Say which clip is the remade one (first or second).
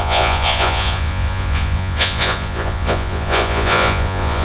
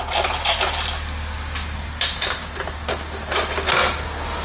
first